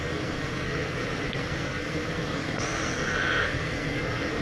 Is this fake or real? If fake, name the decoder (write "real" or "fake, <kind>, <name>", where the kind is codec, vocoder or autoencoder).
fake, codec, SNAC